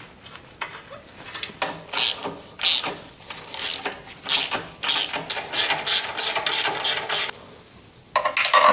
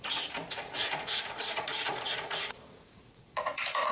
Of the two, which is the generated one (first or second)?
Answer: second